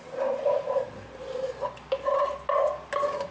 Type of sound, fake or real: real